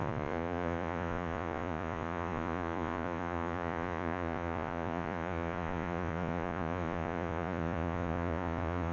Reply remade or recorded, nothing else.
remade